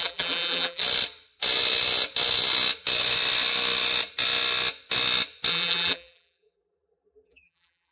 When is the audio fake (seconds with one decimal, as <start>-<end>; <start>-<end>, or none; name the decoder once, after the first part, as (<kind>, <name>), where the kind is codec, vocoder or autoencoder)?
0.0-0.8 (vocoder, BigVGAN v2); 5.5-7.9